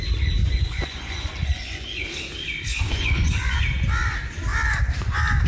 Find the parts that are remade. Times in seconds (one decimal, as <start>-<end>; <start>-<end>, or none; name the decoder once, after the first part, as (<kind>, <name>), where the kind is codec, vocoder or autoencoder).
0.4-2.0 (vocoder, Vocos); 2.7-3.6